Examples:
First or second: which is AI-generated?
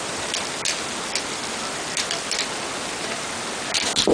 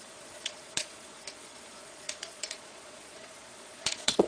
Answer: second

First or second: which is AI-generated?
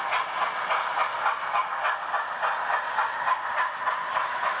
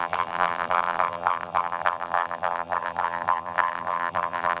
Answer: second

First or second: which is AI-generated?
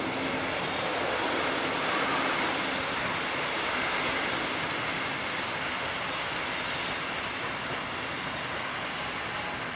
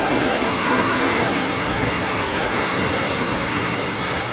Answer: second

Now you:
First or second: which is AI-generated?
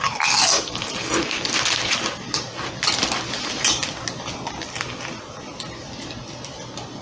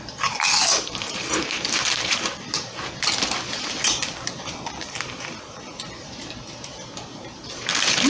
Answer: second